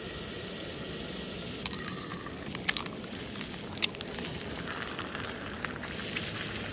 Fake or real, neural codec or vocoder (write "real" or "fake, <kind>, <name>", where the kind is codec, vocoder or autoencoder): real